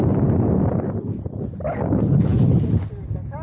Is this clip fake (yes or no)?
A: yes